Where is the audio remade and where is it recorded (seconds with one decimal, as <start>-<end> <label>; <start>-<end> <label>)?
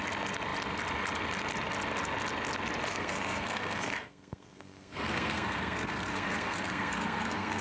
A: 0.0-2.9 recorded; 2.9-7.6 remade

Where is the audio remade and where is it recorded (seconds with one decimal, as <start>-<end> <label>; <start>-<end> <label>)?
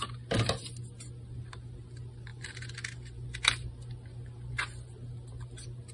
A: 0.0-5.9 recorded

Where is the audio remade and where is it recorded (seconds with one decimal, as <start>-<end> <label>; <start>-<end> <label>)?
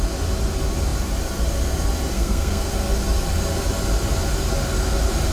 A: 0.0-2.1 recorded; 2.1-2.7 remade; 2.7-5.3 recorded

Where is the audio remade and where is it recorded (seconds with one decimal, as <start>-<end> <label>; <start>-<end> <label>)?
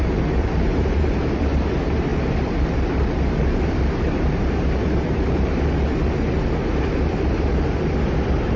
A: 0.0-8.6 remade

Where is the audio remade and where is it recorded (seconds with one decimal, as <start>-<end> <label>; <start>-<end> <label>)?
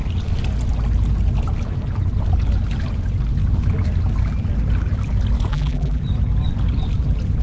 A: 0.0-5.5 recorded; 5.5-6.0 remade; 6.0-7.4 recorded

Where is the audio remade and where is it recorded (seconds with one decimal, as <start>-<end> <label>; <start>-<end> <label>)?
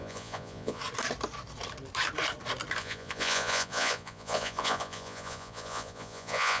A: 0.0-0.8 remade; 0.8-2.8 recorded; 2.8-6.6 remade